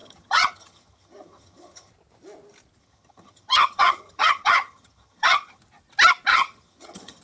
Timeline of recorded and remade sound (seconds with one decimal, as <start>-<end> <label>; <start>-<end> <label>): 0.0-1.9 remade; 1.9-2.8 recorded; 2.8-5.6 remade; 5.6-6.3 recorded; 6.3-7.2 remade